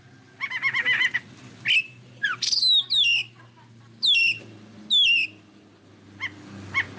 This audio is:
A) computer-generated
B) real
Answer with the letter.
B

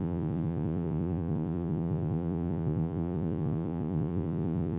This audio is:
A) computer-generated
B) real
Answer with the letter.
A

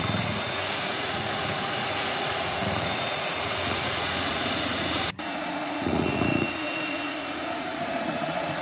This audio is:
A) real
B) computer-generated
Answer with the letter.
B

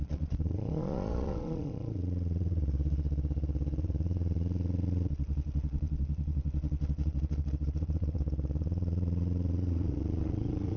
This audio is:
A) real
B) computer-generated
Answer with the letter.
B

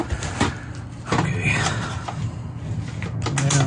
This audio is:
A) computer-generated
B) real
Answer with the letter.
B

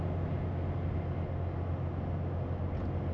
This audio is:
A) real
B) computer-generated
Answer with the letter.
A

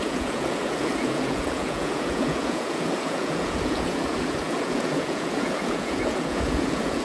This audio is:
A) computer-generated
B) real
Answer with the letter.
A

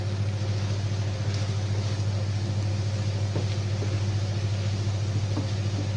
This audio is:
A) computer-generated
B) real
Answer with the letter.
B